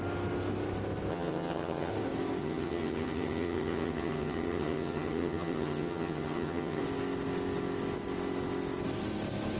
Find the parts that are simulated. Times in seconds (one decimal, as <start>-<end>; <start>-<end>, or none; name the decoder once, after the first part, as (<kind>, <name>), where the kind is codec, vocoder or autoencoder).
1.1-1.9 (vocoder, HiFi-GAN); 2.4-6.8